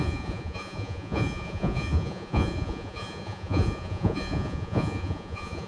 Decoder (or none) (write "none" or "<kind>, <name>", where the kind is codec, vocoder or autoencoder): vocoder, Vocos